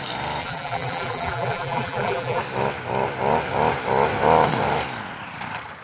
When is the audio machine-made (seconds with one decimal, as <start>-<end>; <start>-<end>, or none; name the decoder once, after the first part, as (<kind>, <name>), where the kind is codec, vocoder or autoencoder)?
0.4-2.4 (vocoder, BigVGAN v2)